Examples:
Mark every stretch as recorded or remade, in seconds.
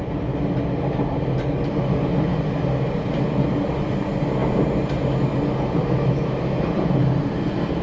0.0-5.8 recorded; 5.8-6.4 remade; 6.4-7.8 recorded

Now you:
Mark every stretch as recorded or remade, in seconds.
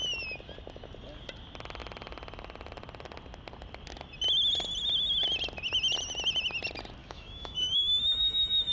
0.0-7.0 recorded; 7.0-8.7 remade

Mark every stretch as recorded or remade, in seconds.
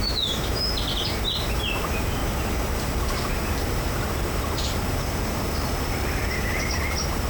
0.0-0.7 remade; 0.7-7.3 recorded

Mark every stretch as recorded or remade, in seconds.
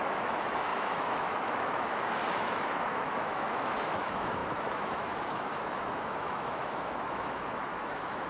0.0-8.3 remade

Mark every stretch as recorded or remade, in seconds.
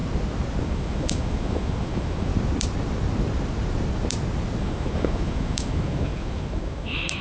0.0-0.6 recorded; 0.6-2.3 remade; 2.3-4.6 recorded; 4.6-7.2 remade